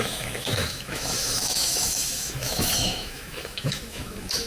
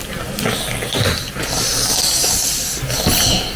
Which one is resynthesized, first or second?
first